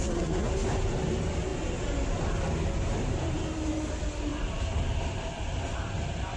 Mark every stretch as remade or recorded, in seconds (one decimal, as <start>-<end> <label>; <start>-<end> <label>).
0.0-0.5 remade; 0.5-6.4 recorded